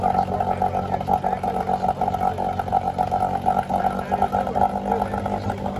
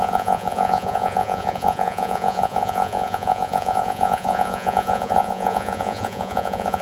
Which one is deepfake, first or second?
second